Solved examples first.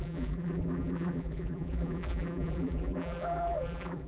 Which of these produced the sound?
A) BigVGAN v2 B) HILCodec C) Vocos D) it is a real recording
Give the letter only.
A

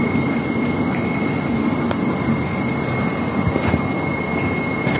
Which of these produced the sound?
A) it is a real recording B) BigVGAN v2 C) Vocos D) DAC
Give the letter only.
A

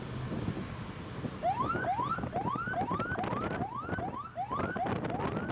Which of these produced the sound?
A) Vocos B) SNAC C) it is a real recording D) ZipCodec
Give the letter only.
C